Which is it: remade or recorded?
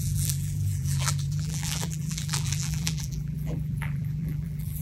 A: remade